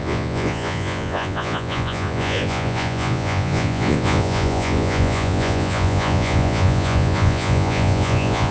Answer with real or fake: fake